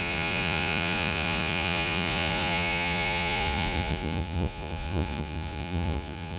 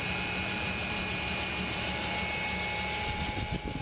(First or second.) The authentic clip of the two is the second